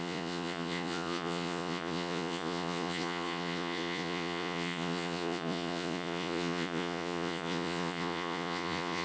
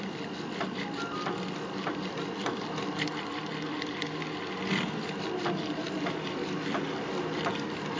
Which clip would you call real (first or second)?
second